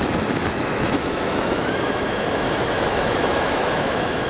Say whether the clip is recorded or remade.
remade